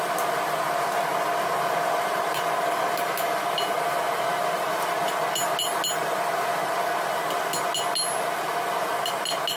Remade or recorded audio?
recorded